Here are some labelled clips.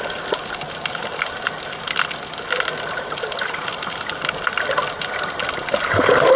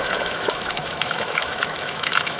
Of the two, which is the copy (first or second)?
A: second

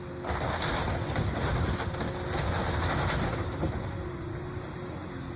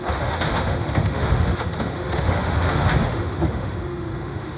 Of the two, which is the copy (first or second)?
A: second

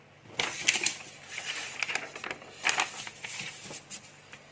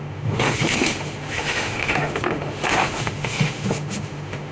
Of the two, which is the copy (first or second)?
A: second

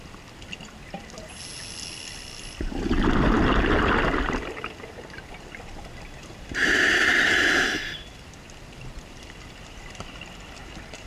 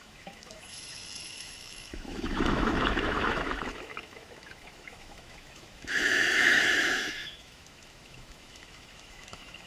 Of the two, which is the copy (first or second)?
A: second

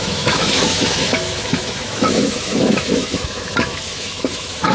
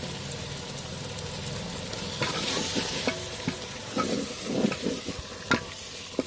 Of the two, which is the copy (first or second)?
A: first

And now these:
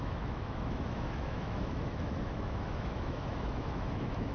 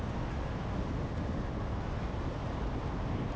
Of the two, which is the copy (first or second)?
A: first